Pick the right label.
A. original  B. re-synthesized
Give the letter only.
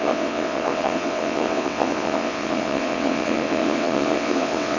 B